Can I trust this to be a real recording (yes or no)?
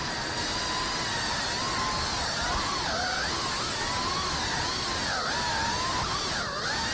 yes